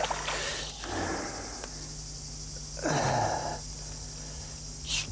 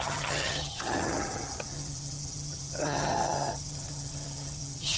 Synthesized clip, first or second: second